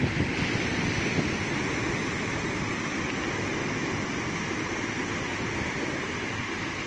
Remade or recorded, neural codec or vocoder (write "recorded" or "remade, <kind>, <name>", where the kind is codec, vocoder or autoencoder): recorded